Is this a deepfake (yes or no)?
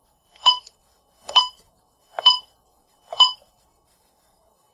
yes